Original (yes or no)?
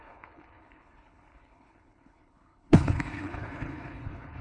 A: no